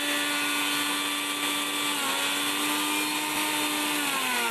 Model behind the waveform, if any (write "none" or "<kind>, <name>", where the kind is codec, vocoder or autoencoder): none